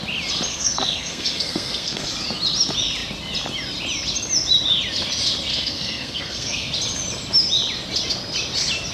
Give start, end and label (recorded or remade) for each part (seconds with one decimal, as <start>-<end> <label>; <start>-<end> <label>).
0.0-0.5 recorded; 0.5-2.1 remade; 2.1-5.5 recorded; 5.5-6.7 remade; 6.7-8.9 recorded